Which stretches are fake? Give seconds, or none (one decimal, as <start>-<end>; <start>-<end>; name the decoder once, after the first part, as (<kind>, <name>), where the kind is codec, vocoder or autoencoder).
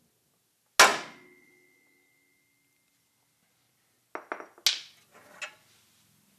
none